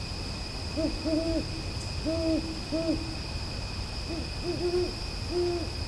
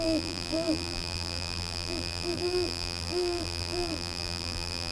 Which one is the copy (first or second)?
second